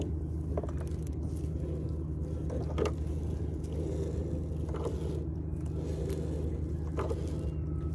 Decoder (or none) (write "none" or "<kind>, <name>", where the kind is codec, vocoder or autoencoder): none